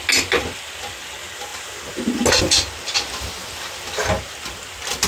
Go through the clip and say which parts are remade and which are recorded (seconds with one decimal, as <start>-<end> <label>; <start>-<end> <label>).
0.0-5.1 recorded